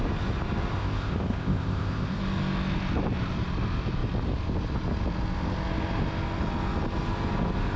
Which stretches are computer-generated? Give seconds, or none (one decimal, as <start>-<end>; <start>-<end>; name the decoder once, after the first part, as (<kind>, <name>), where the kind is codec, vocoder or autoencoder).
0.8-2.2 (codec, ZipCodec)